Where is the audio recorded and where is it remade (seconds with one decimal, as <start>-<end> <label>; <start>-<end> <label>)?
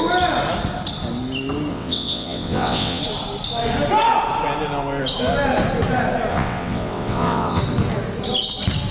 0.0-1.7 recorded; 1.7-3.0 remade; 3.0-6.3 recorded; 6.3-7.6 remade; 7.6-8.9 recorded